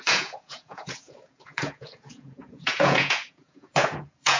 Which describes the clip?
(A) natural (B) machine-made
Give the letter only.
B